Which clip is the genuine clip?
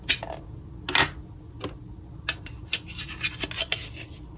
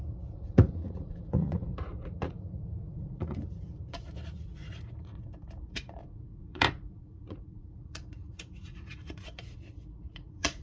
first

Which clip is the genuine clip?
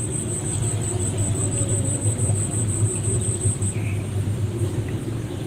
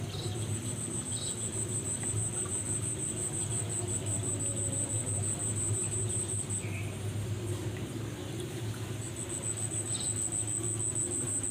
second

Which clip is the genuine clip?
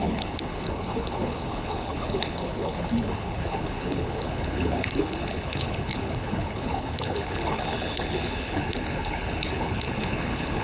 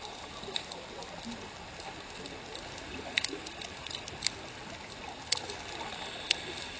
second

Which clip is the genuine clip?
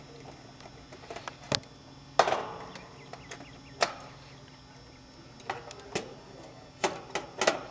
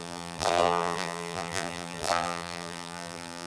first